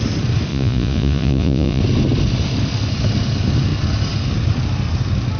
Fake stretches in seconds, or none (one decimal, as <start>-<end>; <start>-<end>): 0.5-1.8